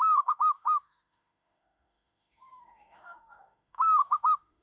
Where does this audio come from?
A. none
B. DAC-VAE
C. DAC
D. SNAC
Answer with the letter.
B